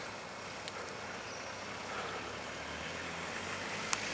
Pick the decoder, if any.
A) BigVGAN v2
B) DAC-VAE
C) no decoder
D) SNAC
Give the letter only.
C